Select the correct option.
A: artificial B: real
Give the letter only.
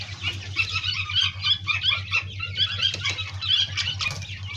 B